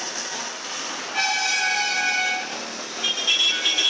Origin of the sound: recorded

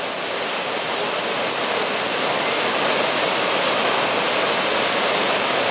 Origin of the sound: recorded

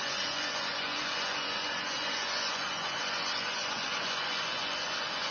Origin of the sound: remade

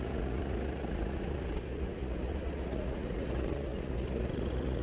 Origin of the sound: remade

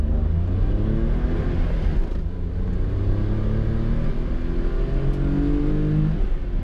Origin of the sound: recorded